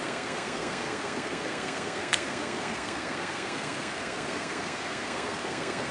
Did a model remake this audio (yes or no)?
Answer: yes